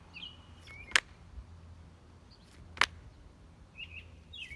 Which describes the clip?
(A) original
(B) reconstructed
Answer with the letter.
A